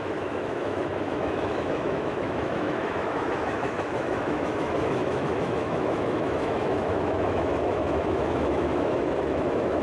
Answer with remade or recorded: remade